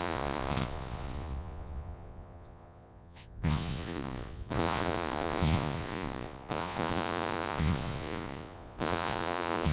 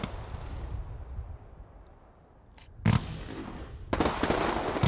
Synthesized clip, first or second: first